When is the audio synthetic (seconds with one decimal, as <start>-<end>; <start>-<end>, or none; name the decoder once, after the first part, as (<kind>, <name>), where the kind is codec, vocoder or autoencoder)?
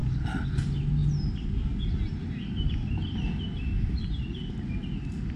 none